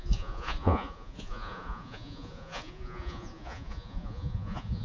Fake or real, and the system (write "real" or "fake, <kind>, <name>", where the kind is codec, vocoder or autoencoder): fake, vocoder, Vocos